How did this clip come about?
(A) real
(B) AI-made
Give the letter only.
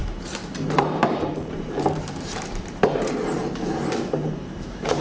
B